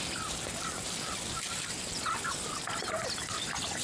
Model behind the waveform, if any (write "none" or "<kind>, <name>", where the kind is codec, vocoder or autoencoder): none